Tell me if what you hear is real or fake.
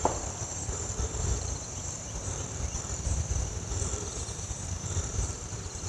fake